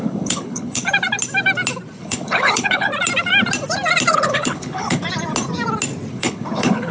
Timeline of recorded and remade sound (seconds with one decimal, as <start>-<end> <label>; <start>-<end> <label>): 0.0-0.8 remade; 0.8-2.0 recorded; 2.0-2.9 remade; 2.9-4.1 recorded; 4.1-5.0 remade; 5.0-6.1 recorded; 6.1-6.9 remade